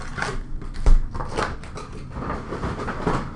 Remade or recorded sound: recorded